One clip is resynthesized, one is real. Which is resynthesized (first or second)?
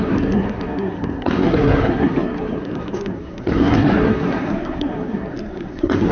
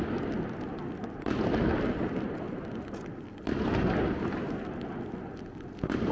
first